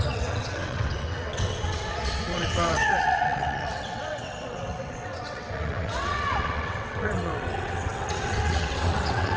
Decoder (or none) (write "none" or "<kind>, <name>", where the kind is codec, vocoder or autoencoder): vocoder, WaveNeXt